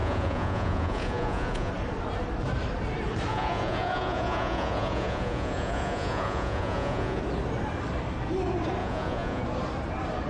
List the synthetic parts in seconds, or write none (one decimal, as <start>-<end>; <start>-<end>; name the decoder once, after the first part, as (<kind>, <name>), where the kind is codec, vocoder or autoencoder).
0.0-1.7 (vocoder, Vocos); 3.3-7.2; 8.8-9.4